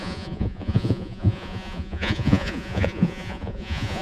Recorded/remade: remade